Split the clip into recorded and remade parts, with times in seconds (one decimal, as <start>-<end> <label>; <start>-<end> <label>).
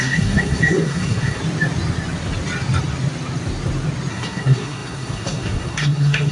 0.0-1.4 remade; 1.4-4.1 recorded; 4.1-6.3 remade